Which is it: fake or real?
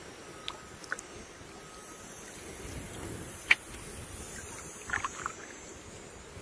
real